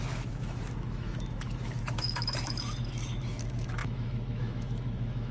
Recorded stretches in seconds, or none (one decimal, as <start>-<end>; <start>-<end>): none